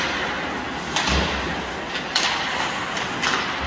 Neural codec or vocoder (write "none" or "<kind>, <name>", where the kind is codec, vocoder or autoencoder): none